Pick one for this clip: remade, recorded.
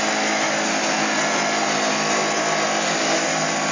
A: recorded